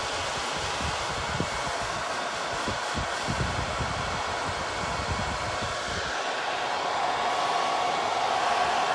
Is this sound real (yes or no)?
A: yes